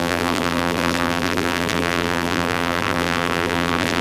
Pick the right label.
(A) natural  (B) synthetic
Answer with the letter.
B